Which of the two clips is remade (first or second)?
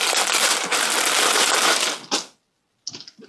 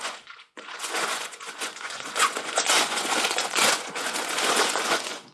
second